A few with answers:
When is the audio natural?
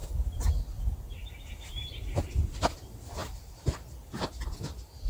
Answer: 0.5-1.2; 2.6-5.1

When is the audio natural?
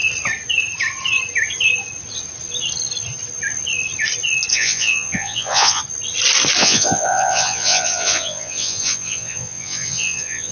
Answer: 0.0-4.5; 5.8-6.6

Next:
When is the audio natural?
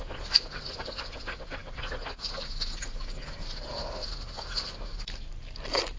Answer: 0.0-6.0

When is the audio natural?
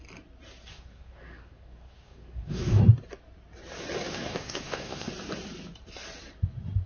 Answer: 0.0-0.7; 2.8-4.1; 5.1-6.9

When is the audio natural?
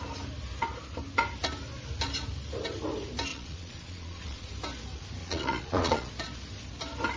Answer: 0.0-3.3; 4.5-5.2; 6.1-7.2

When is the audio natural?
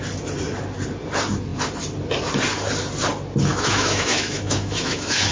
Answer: 0.0-3.5